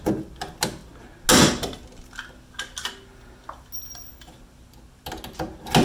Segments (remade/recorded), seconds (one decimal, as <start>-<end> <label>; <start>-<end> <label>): 0.0-5.8 recorded